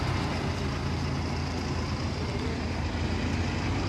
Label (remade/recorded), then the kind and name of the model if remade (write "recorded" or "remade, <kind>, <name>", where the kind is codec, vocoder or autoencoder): recorded